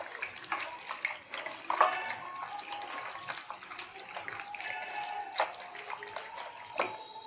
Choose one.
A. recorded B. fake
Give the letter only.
A